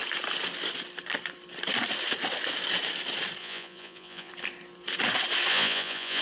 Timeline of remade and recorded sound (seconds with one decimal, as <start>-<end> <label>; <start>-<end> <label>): 0.0-3.4 recorded; 3.4-4.3 remade; 4.3-5.5 recorded; 5.5-6.2 remade